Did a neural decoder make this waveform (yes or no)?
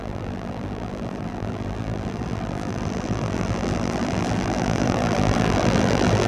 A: yes